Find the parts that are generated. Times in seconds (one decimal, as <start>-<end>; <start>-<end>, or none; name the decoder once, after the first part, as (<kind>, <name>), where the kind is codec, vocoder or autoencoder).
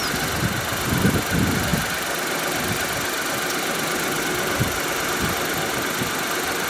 none